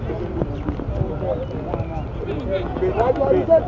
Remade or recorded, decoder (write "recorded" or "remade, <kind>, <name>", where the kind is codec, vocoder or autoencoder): recorded